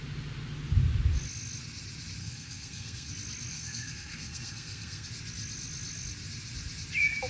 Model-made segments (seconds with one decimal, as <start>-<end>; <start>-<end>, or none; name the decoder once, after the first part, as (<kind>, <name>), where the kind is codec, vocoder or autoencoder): 2.2-3.1 (codec, SNAC); 3.5-5.1

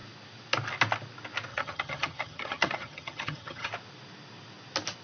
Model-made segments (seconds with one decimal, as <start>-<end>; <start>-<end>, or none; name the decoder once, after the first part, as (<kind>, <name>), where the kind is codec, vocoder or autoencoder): 1.5-3.7 (vocoder, HiFi-GAN)

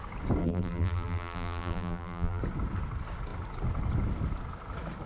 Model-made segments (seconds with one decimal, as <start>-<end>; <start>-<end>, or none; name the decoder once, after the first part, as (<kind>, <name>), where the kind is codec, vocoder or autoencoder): 0.4-2.4 (vocoder, BigVGAN v2)